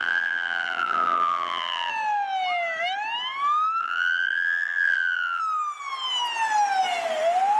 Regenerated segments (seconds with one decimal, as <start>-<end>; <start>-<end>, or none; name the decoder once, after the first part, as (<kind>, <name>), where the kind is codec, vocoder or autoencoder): 0.0-1.9 (vocoder, BigVGAN v2); 3.8-5.4